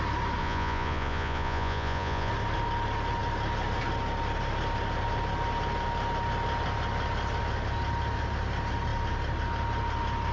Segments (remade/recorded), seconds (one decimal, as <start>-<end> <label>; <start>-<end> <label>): 0.0-0.4 recorded; 0.4-2.3 remade; 2.3-10.3 recorded